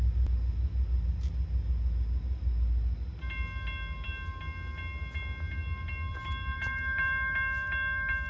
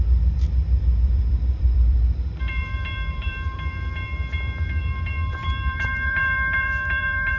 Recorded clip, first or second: first